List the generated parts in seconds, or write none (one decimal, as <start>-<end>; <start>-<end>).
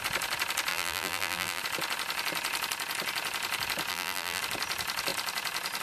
0.7-1.6; 3.9-4.4